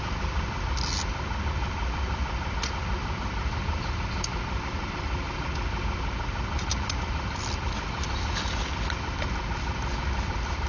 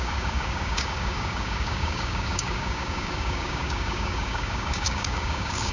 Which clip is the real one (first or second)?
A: first